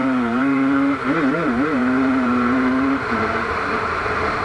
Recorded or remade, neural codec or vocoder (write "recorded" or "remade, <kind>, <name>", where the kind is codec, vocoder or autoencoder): remade, vocoder, BigVGAN v2